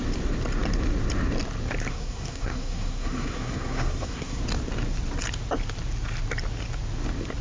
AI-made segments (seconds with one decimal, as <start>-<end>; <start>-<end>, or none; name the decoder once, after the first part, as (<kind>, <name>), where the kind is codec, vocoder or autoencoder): 1.9-4.4 (codec, SNAC)